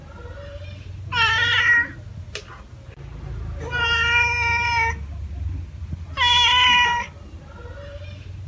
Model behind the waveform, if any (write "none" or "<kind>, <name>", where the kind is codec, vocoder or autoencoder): none